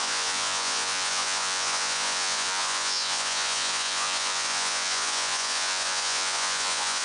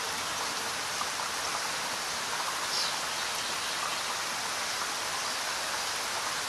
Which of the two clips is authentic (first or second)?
second